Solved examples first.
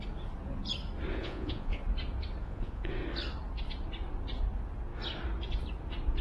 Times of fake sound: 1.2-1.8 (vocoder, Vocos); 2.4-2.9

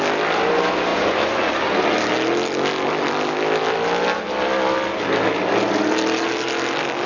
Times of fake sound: 0.9-1.5 (vocoder, Vocos)

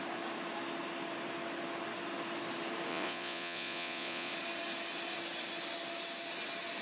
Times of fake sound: 2.9-4.3 (vocoder, Vocos)